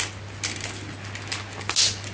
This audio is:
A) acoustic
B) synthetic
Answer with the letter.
A